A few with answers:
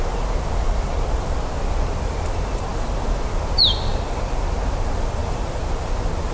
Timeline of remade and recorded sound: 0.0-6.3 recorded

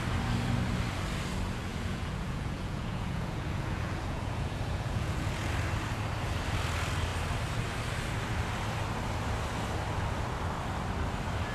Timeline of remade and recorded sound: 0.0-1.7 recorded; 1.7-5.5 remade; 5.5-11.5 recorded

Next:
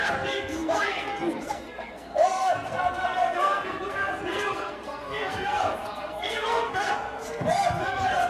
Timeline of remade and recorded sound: 0.0-8.3 remade

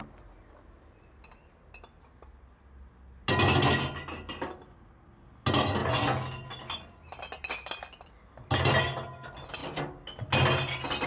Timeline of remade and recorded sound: 0.0-11.1 recorded

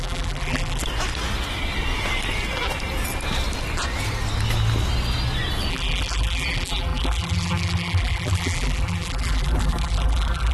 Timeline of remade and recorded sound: 0.0-0.8 remade; 0.8-5.7 recorded; 5.7-10.5 remade